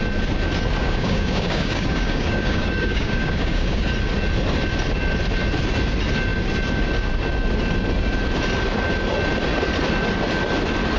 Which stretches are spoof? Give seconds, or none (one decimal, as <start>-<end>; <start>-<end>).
0.8-3.9